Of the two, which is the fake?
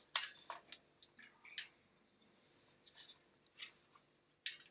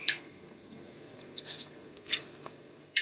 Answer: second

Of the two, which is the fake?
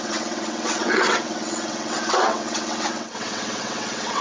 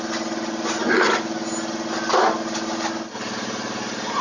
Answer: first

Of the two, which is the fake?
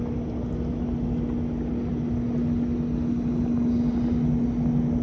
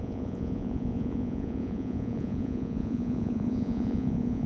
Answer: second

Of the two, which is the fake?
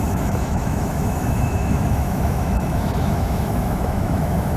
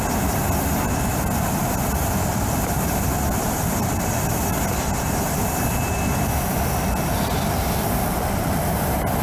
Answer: first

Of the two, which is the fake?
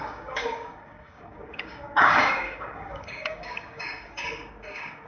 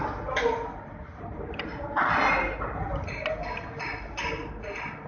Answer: first